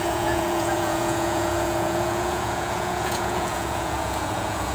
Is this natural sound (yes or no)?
no